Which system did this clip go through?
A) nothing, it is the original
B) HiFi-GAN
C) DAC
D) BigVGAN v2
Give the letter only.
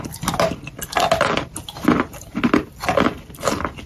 A